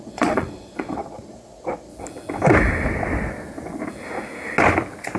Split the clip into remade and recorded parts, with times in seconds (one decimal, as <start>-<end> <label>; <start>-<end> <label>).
0.0-1.9 remade; 1.9-5.2 recorded

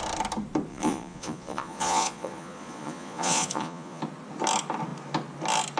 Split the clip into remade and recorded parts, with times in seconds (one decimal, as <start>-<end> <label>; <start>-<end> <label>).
0.0-0.7 recorded; 0.7-4.0 remade; 4.0-5.8 recorded

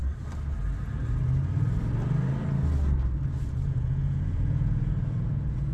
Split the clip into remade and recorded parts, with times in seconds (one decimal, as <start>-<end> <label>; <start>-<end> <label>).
0.0-3.4 recorded; 3.4-5.7 remade

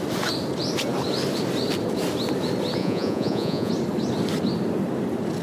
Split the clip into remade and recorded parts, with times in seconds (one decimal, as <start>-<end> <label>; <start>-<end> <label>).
0.0-2.8 recorded; 2.8-3.7 remade; 3.7-5.4 recorded

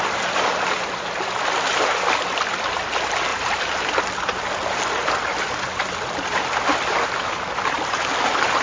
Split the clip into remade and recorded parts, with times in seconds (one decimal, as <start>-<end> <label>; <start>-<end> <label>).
0.0-8.6 recorded

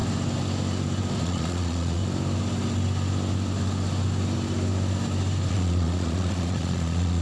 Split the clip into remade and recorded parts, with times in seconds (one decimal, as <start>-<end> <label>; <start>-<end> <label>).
0.0-1.2 recorded; 1.2-2.0 remade; 2.0-5.5 recorded; 5.5-7.2 remade